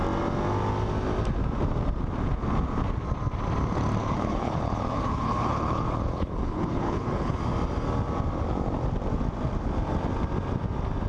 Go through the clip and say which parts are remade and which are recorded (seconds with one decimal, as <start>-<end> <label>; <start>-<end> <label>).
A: 0.0-4.0 recorded; 4.0-7.4 remade; 7.4-11.1 recorded